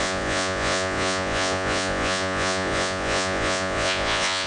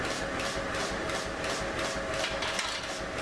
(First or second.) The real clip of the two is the second